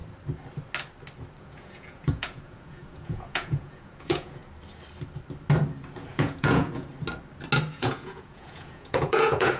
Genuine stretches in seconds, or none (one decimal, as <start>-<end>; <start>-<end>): 0.0-1.4; 4.4-6.1; 6.9-7.7